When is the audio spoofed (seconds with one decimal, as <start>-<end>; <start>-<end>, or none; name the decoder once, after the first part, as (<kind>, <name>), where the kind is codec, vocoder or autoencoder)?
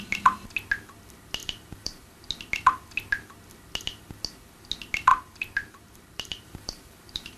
1.4-2.2 (vocoder, BigVGAN v2); 5.1-7.4